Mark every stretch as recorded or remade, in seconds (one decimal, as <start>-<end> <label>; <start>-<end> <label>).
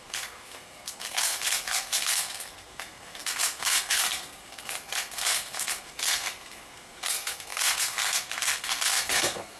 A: 0.0-9.6 remade